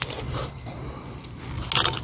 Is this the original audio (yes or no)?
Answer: yes